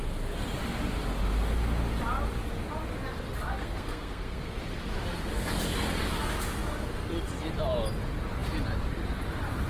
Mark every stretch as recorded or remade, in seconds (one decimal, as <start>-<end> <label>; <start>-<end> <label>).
0.0-3.6 recorded; 3.6-4.6 remade; 4.6-9.7 recorded